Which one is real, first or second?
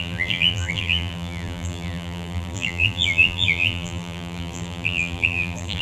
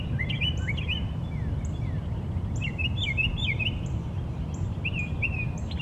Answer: second